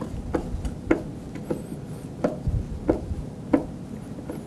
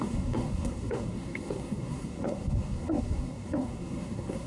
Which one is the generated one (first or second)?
second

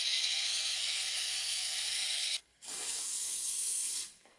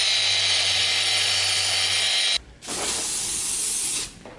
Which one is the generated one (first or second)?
first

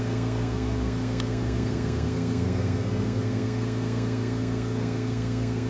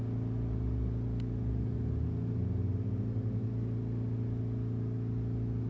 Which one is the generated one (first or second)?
first